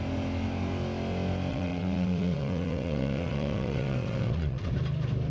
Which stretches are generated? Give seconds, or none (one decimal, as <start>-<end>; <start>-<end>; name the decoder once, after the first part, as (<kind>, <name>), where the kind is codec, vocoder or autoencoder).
1.5-4.7 (vocoder, WaveNeXt)